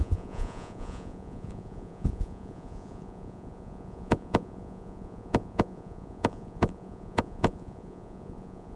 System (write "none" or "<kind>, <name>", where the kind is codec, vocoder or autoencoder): vocoder, Vocos